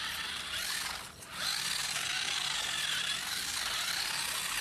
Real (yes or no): yes